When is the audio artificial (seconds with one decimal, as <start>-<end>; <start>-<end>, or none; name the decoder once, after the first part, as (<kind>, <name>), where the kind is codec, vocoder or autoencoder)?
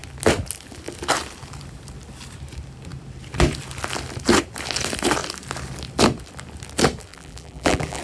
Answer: 7.1-8.0 (vocoder, BigVGAN v2)